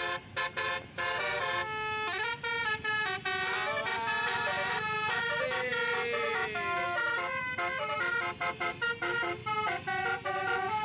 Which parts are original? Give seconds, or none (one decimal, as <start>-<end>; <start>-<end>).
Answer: 1.6-3.8; 5.7-8.5; 9.4-10.0